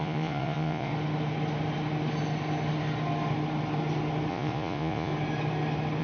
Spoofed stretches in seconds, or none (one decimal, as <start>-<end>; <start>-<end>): 0.0-0.9; 4.3-5.1